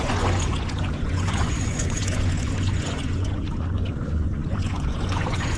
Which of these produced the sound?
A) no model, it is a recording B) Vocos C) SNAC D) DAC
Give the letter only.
B